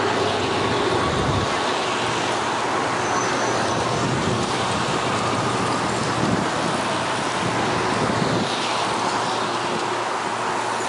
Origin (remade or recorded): recorded